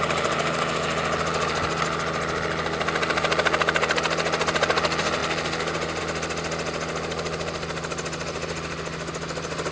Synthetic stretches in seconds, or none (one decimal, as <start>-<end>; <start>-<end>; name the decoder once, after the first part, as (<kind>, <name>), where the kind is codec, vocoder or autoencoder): none